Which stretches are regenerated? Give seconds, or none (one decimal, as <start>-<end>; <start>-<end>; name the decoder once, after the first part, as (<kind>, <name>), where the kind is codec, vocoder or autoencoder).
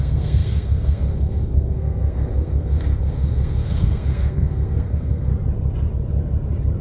0.0-5.3 (codec, SNAC)